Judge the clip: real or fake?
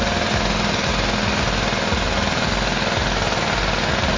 real